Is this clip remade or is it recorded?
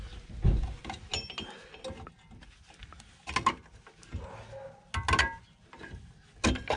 recorded